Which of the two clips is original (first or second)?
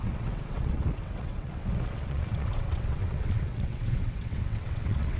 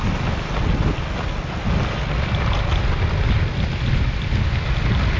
second